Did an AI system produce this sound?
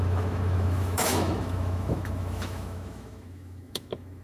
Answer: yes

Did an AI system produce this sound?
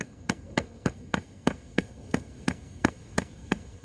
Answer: yes